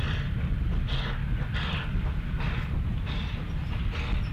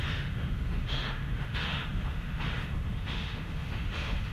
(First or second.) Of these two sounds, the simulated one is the second